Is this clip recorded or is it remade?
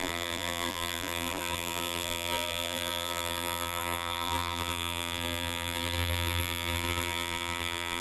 remade